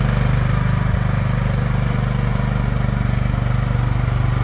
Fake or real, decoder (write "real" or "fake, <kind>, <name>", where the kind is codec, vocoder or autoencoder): real